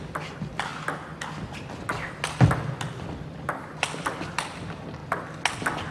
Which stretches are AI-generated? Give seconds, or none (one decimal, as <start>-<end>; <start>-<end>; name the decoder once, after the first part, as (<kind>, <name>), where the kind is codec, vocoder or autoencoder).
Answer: 0.0-0.7 (vocoder, BigVGAN v2); 2.5-5.0